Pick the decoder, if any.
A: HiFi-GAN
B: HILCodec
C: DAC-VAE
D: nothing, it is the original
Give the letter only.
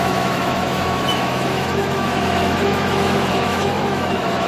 C